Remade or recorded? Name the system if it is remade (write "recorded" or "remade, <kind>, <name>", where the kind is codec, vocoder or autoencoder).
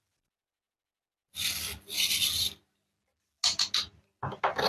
recorded